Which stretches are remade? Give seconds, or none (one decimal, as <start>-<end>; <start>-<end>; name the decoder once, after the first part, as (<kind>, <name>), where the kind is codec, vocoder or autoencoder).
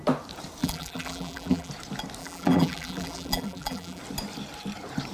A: 0.6-1.7 (vocoder, BigVGAN v2); 2.2-4.0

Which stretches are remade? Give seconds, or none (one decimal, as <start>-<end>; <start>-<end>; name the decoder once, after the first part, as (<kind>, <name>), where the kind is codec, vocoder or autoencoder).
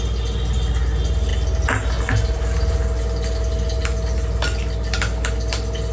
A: none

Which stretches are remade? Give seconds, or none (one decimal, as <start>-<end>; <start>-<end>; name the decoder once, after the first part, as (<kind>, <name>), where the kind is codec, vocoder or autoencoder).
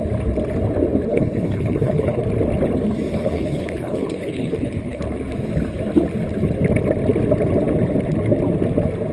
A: 1.1-2.2 (codec, HILCodec); 3.1-5.0